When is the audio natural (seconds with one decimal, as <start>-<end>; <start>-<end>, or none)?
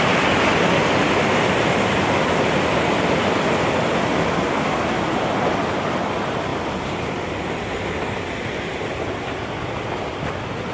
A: 0.0-10.7